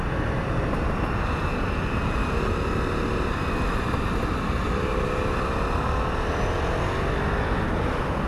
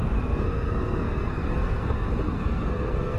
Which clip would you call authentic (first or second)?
first